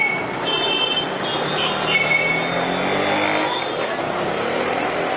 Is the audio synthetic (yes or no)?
no